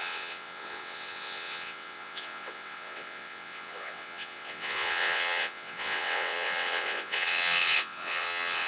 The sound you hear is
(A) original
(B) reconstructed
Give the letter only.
B